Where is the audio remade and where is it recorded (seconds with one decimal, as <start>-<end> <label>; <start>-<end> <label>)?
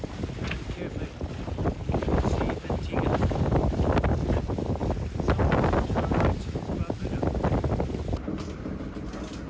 0.0-9.5 recorded